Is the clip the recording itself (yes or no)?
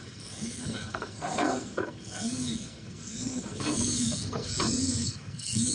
no